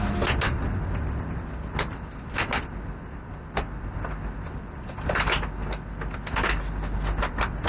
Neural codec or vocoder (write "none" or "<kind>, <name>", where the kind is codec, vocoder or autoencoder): none